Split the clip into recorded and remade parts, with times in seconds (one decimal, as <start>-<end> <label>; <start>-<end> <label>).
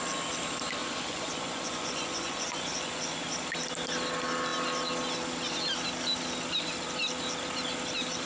0.0-0.8 recorded; 0.8-3.2 remade; 3.2-8.3 recorded